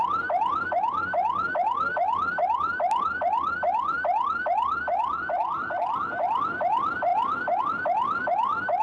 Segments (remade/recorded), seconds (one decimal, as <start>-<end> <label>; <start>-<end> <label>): 0.0-8.8 recorded